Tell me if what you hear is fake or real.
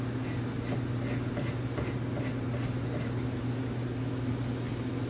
real